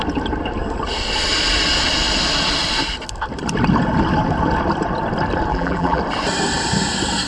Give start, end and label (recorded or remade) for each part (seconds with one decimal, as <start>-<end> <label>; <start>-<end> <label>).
0.0-5.5 recorded; 5.5-6.0 remade; 6.0-7.3 recorded